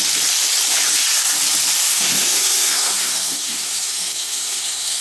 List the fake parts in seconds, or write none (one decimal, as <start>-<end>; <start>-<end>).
1.9-5.0